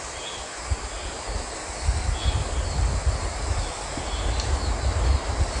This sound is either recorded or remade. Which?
recorded